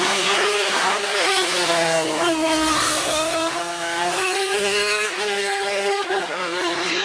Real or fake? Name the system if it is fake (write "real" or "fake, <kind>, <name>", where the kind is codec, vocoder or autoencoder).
fake, codec, SNAC